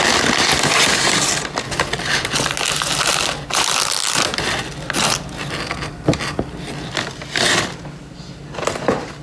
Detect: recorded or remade recorded